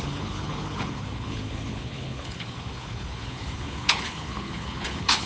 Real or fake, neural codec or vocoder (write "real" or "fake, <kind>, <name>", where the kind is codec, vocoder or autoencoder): fake, codec, HILCodec